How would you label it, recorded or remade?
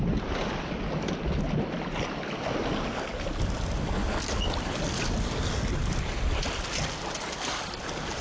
recorded